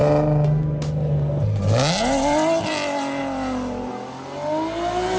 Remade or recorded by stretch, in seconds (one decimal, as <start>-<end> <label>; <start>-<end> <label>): 0.0-5.2 recorded